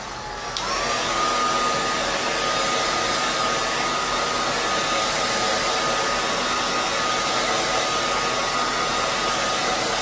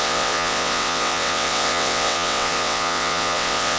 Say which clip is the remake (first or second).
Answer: second